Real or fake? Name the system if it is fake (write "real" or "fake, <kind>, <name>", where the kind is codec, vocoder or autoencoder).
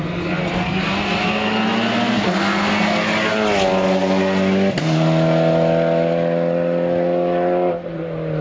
real